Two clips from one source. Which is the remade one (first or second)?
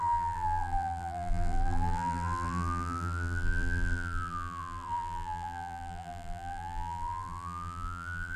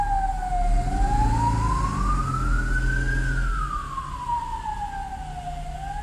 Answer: first